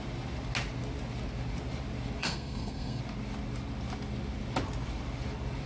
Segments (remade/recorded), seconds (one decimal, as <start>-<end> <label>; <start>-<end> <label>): 0.0-2.2 recorded; 2.2-3.0 remade; 3.0-5.7 recorded